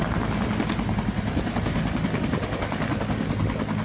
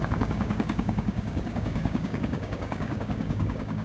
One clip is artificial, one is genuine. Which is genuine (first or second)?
first